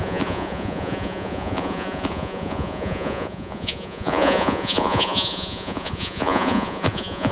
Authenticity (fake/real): fake